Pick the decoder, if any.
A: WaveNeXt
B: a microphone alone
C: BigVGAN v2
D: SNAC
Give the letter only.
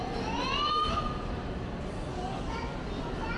B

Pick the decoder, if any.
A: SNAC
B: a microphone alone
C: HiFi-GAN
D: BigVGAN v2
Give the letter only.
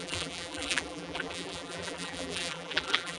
D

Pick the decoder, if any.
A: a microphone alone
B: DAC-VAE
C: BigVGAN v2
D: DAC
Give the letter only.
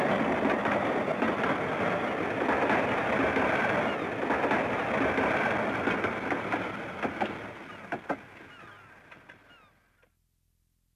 A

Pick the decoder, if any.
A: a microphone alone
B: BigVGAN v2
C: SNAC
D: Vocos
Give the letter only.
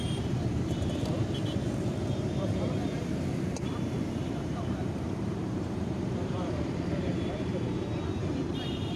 B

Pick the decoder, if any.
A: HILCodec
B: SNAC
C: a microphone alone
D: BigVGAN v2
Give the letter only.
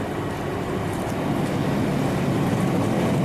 C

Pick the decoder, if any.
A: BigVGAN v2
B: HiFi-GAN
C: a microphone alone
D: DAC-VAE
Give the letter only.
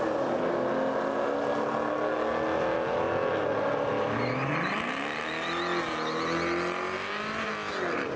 C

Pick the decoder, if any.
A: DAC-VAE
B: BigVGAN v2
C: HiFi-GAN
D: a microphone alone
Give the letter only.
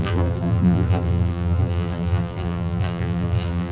B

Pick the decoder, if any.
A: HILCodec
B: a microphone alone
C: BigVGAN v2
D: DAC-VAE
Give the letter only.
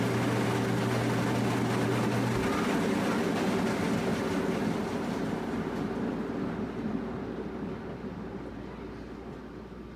B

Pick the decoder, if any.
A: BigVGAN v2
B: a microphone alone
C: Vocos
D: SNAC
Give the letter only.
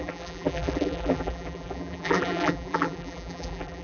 A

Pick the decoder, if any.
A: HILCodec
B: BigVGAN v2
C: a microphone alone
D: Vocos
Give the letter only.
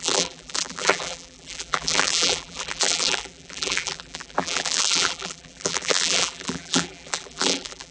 B